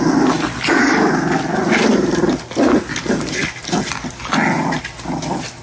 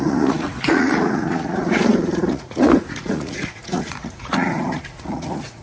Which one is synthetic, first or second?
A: second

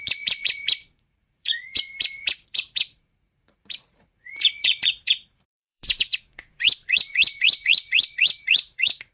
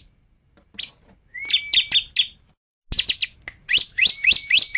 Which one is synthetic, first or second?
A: first